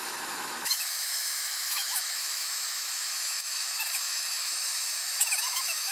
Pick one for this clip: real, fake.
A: fake